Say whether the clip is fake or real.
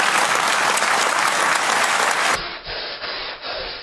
real